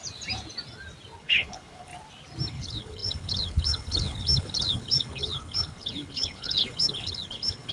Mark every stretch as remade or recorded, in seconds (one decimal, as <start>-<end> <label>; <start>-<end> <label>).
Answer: 0.0-1.2 recorded; 1.2-1.9 remade; 1.9-2.5 recorded; 2.5-7.7 remade